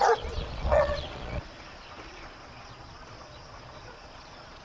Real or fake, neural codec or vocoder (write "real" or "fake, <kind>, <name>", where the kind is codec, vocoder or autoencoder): fake, vocoder, Vocos